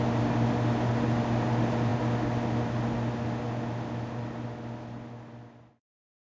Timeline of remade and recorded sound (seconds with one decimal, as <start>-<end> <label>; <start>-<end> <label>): 0.0-6.4 recorded